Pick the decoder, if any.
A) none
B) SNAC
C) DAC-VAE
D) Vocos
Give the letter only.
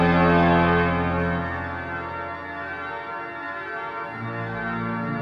A